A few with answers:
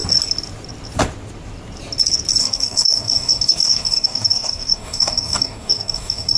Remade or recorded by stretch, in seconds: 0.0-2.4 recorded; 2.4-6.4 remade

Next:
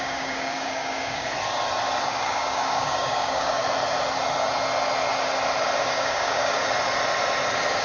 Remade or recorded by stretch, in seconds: 0.0-1.3 remade; 1.3-2.0 recorded; 2.0-3.6 remade; 3.6-5.8 recorded; 5.8-6.6 remade; 6.6-7.8 recorded

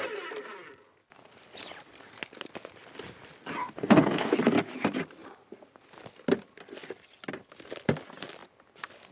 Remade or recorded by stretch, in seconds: 0.0-3.6 recorded; 3.6-4.3 remade; 4.3-9.1 recorded